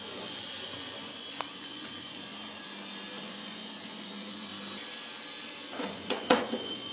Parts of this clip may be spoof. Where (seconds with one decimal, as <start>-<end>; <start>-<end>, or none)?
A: 0.0-2.6; 3.2-4.5; 5.8-6.9